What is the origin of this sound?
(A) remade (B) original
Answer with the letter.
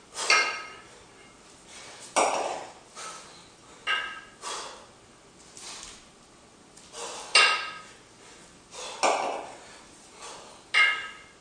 B